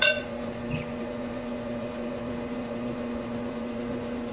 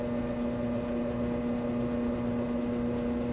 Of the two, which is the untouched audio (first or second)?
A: second